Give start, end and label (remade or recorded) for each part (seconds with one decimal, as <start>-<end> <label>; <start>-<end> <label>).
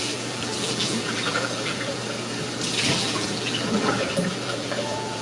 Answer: 0.0-2.0 remade; 2.0-2.8 recorded; 2.8-5.2 remade